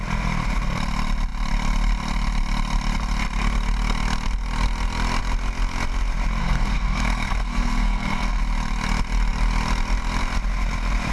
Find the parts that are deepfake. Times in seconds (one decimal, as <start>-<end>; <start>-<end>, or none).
6.4-8.4